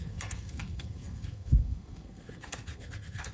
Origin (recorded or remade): remade